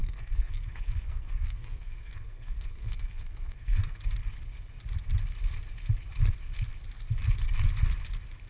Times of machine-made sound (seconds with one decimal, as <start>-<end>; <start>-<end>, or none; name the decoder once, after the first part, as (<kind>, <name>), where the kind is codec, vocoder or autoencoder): 0.0-4.0 (codec, SNAC)